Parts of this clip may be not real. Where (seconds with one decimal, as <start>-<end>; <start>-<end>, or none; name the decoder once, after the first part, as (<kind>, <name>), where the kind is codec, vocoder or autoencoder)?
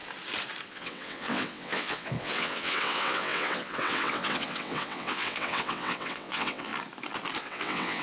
0.7-6.7 (vocoder, WaveNeXt); 7.4-8.0